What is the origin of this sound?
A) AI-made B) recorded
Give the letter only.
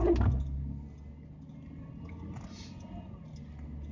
B